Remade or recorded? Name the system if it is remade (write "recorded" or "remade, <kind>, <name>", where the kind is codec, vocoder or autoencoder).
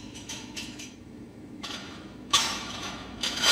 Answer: remade, autoencoder, DAC-VAE